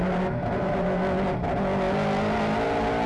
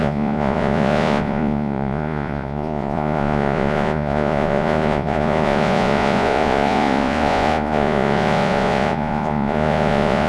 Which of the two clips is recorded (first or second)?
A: first